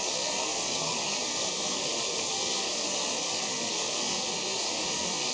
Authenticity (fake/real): fake